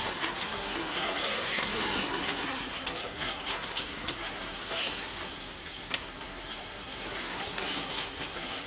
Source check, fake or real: fake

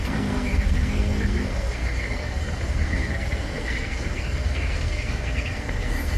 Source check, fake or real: fake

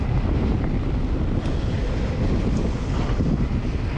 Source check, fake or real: real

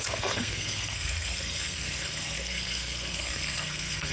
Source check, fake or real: fake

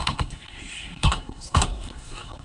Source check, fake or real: fake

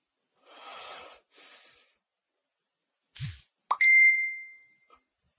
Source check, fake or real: real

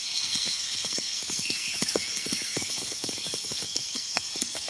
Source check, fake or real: fake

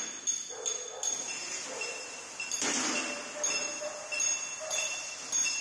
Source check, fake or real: real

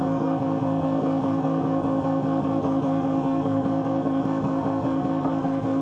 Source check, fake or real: fake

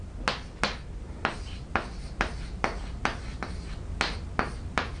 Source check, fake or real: real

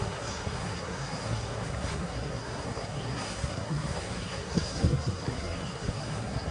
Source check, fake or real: fake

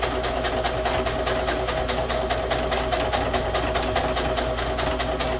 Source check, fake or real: real